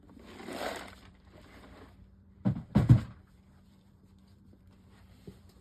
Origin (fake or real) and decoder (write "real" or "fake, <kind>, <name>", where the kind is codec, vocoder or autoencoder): fake, vocoder, BigVGAN v2